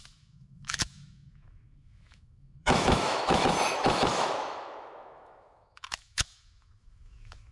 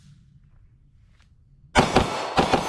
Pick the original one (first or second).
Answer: second